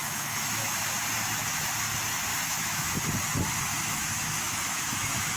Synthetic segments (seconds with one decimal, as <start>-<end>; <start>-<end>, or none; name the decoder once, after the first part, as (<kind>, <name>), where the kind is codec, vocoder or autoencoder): 0.0-0.8 (autoencoder, DAC-VAE); 2.3-2.9; 3.7-5.4